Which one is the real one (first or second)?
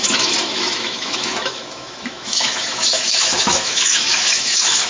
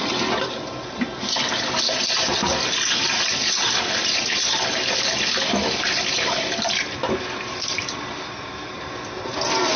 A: second